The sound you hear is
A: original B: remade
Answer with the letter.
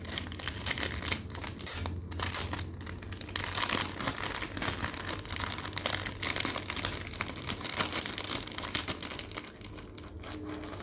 A